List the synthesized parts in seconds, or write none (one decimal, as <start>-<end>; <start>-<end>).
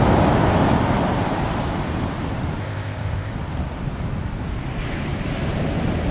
2.6-3.3